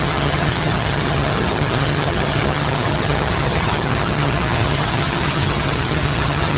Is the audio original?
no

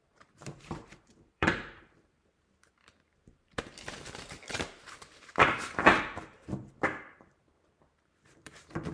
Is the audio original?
no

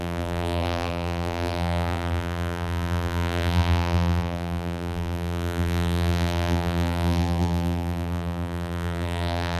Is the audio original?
no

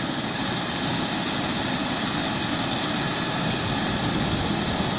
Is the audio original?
yes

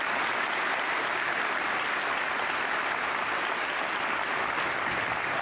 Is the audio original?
yes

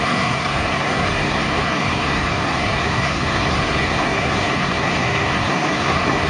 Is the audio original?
no